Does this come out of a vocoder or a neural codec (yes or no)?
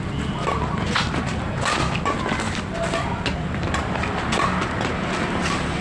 no